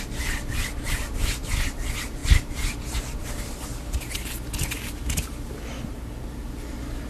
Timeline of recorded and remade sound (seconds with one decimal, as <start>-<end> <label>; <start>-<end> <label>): 0.0-7.1 recorded